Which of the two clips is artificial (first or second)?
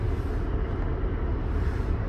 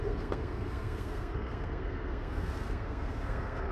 second